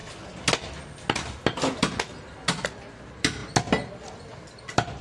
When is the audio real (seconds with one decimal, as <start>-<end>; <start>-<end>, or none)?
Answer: 0.0-5.0